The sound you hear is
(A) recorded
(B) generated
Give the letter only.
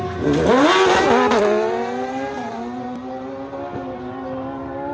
A